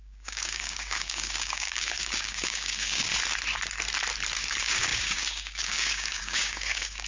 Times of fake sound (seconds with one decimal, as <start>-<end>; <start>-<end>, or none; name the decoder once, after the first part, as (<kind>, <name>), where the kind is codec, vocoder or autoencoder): 0.0-3.1 (codec, DAC); 4.5-7.1